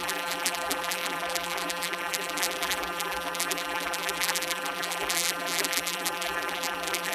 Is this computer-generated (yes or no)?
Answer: yes